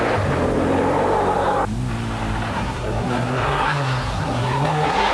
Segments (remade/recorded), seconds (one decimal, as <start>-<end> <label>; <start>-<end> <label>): 0.0-2.5 recorded; 2.5-5.1 remade